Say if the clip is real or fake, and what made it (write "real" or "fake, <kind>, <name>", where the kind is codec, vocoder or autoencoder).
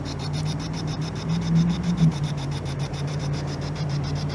fake, vocoder, BigVGAN v2